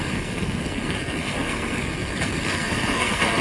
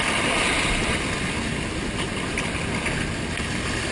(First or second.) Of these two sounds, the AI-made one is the first